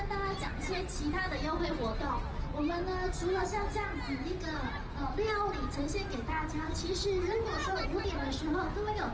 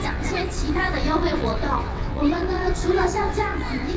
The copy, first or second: second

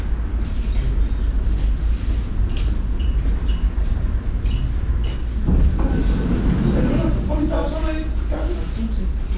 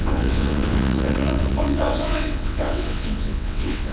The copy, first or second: second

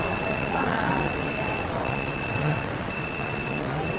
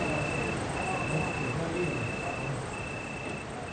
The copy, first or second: first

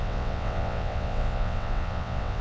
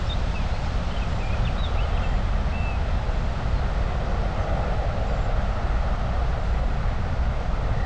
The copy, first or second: first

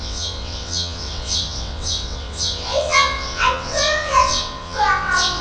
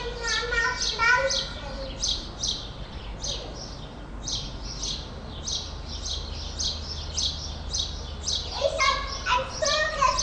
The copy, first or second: first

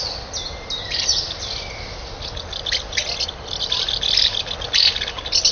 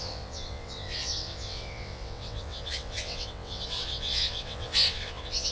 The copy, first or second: second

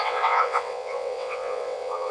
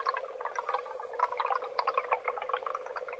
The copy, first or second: first